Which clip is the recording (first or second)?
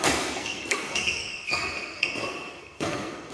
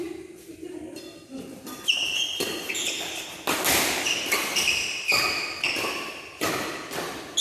second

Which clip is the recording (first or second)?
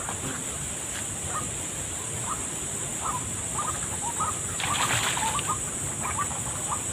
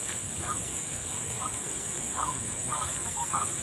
first